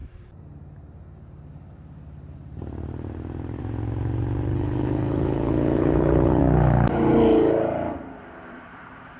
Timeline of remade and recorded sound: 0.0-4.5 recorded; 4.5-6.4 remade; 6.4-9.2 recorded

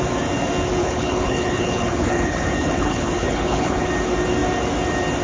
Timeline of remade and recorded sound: 0.0-0.8 recorded; 0.8-3.9 remade; 3.9-5.2 recorded

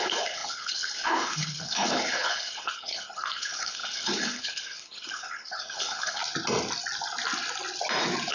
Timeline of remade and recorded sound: 0.0-6.2 remade; 6.2-8.3 recorded